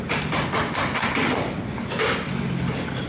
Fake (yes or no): no